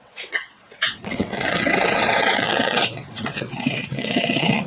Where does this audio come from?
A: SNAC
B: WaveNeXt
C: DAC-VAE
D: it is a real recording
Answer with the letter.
B